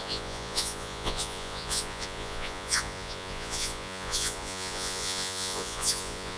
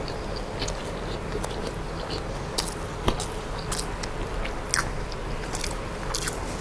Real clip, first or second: second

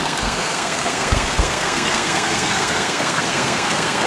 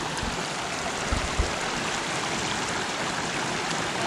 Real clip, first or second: second